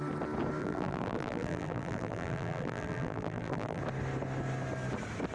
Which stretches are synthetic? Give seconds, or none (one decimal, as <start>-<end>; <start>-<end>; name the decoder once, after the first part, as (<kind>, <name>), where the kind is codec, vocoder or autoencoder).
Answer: 0.6-3.8 (vocoder, BigVGAN v2)